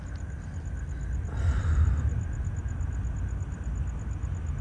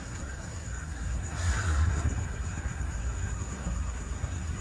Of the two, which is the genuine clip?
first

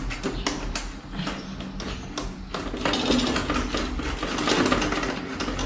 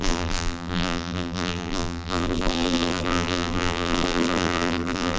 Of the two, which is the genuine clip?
first